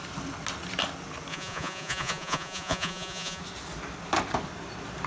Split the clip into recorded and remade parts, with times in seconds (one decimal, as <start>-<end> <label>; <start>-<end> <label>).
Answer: 0.0-1.3 recorded; 1.3-3.4 remade; 3.4-5.1 recorded